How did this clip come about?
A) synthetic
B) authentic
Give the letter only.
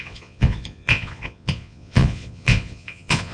A